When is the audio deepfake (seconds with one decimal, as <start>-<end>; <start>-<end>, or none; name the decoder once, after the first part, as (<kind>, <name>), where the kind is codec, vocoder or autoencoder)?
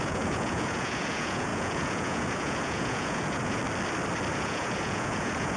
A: 0.0-3.6 (vocoder, Vocos); 4.3-5.6